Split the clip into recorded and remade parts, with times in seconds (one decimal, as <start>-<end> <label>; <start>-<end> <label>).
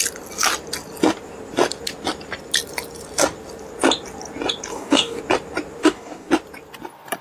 0.0-4.7 recorded; 4.7-5.2 remade; 5.2-5.8 recorded; 5.8-6.3 remade; 6.3-7.2 recorded